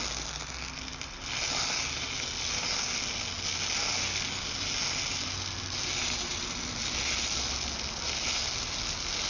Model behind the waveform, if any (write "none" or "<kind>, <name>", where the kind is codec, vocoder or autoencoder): none